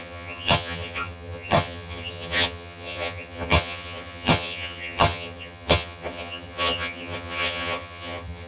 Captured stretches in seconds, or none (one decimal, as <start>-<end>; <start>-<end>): none